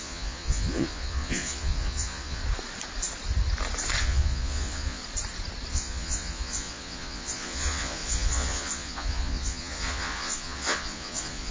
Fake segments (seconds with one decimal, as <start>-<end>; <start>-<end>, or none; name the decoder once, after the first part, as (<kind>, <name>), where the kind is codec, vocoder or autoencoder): 0.0-2.4 (vocoder, Vocos); 4.0-5.0; 5.7-11.5